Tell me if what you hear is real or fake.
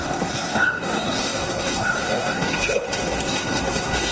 fake